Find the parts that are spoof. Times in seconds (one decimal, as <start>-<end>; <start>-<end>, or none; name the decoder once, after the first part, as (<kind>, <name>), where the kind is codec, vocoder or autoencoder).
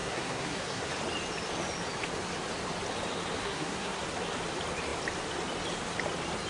0.0-0.9 (codec, SNAC); 3.4-4.0